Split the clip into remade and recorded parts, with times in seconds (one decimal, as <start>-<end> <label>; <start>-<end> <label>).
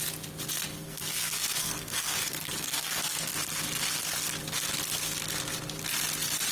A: 0.0-0.7 recorded; 0.7-3.3 remade; 3.3-6.5 recorded